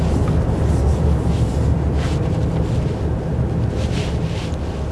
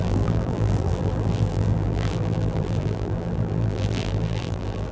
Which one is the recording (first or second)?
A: first